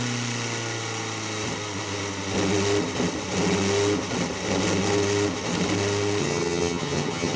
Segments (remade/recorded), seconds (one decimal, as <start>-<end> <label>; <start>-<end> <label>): 0.0-6.2 recorded; 6.2-7.4 remade